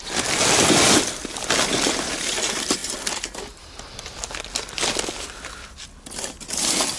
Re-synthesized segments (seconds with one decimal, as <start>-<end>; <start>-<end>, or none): none